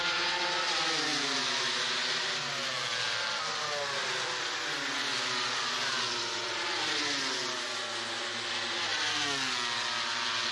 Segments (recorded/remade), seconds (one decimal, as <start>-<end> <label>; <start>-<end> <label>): 0.0-10.5 recorded